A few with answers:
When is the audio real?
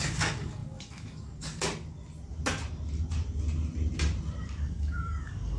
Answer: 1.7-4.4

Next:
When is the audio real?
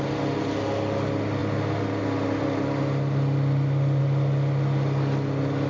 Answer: 0.0-5.7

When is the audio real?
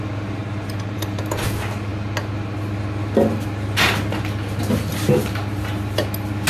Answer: 0.0-0.4; 1.2-6.5